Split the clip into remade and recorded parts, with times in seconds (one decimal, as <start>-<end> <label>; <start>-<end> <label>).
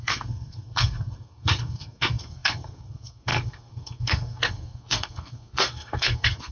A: 0.0-6.5 remade